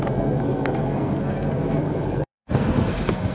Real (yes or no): no